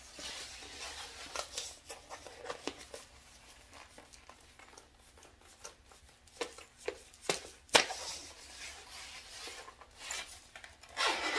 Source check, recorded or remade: recorded